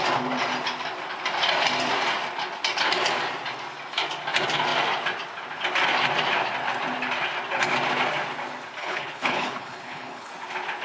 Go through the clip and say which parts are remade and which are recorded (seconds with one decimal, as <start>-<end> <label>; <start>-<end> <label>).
0.0-8.8 recorded; 8.8-10.3 remade; 10.3-10.8 recorded